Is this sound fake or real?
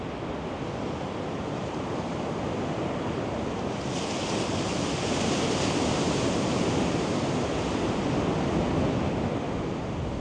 real